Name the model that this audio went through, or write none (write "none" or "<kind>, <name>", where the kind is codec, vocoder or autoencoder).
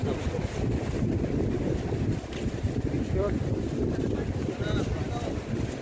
none